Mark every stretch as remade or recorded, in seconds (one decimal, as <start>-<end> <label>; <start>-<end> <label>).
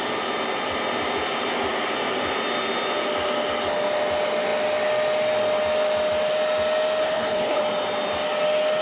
0.0-7.0 recorded; 7.0-7.6 remade; 7.6-8.8 recorded